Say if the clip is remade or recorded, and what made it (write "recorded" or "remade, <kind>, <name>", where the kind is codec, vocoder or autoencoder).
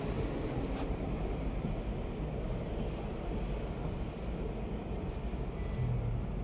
recorded